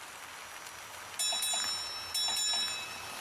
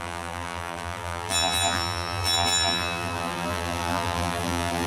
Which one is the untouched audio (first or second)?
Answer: first